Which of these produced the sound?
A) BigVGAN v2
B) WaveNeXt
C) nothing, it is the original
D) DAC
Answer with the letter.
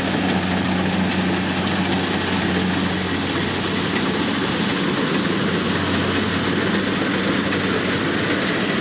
C